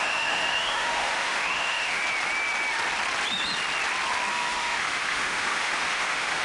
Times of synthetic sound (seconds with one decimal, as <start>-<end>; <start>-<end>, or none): 0.0-2.0; 4.3-6.4